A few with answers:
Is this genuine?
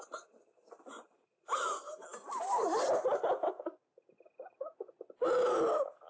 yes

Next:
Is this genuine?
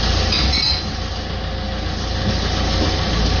yes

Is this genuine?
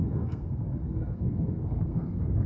no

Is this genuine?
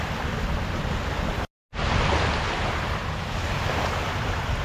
yes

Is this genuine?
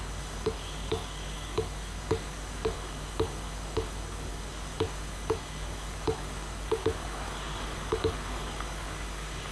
no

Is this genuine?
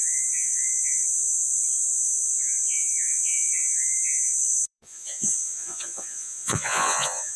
no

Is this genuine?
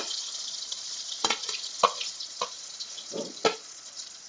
no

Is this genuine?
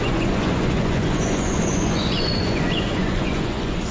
no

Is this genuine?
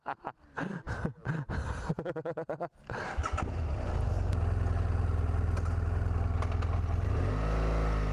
yes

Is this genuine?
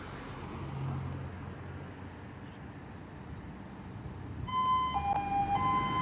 yes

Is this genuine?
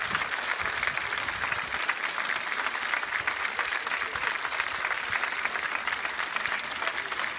yes